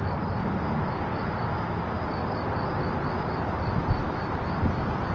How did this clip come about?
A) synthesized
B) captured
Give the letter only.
B